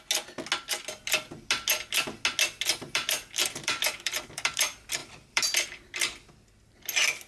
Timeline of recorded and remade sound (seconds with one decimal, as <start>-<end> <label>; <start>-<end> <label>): 0.0-2.7 recorded; 2.7-4.6 remade; 4.6-5.0 recorded; 5.0-6.3 remade; 6.3-7.3 recorded